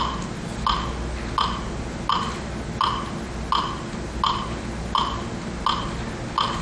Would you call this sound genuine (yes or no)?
yes